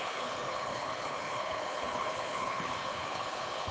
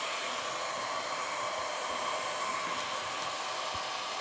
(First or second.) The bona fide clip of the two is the second